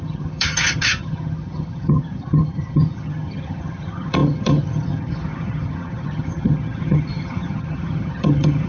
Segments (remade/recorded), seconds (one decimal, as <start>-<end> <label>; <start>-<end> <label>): 0.0-8.7 remade